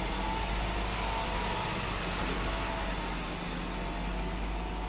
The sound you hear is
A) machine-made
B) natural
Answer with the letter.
B